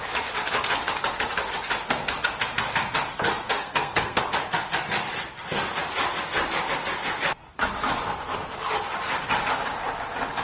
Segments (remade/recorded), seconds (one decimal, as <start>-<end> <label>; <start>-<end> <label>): 0.0-3.6 recorded; 3.6-4.2 remade; 4.2-10.4 recorded